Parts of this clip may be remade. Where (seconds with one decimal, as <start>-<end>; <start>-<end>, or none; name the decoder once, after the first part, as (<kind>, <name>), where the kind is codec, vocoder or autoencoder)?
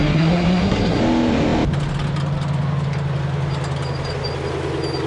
0.0-1.0 (codec, SNAC)